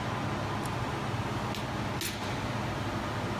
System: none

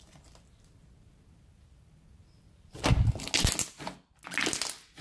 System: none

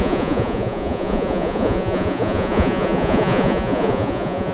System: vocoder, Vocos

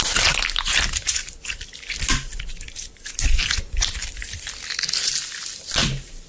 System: none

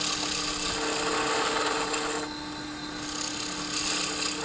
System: none